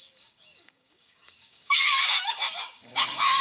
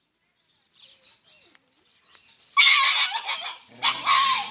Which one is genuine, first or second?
second